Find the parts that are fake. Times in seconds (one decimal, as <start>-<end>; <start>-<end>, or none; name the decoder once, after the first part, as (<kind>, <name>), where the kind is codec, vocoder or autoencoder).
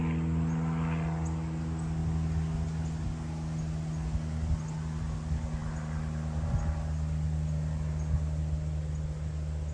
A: none